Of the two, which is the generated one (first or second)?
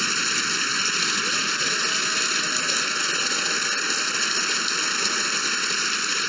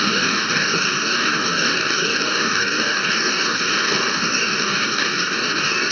second